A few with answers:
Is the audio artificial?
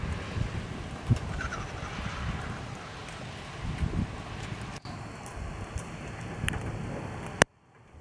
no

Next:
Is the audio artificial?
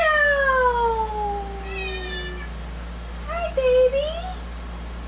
no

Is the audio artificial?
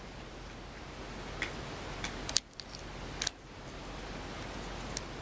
no